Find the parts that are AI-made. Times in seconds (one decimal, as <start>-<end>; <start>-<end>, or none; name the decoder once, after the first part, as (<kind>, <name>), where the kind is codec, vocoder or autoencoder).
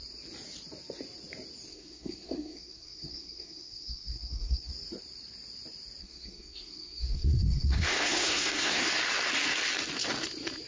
1.7-4.7 (codec, SNAC); 6.0-8.9